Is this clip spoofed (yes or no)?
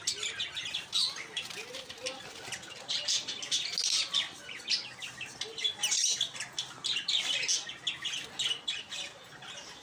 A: no